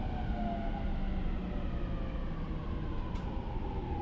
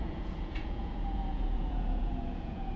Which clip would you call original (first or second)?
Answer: first